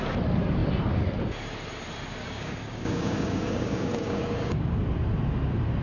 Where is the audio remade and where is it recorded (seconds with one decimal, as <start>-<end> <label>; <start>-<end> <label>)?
0.0-2.2 recorded; 2.2-4.8 remade; 4.8-5.8 recorded